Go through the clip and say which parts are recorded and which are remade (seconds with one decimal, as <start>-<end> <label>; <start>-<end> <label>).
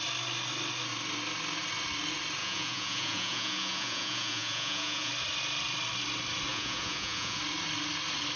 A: 0.0-2.4 recorded; 2.4-5.1 remade; 5.1-6.5 recorded; 6.5-7.4 remade; 7.4-8.4 recorded